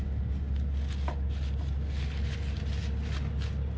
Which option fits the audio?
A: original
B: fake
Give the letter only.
A